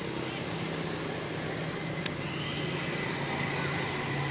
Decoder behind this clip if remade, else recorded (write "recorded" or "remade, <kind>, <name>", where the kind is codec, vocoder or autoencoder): recorded